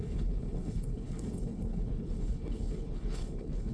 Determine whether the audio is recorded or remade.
remade